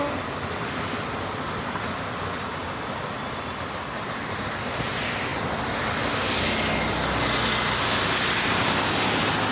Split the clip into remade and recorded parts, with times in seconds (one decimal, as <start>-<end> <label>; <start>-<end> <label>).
0.0-9.5 recorded